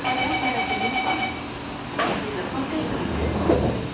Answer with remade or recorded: recorded